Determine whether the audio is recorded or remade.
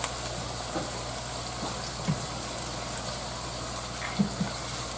recorded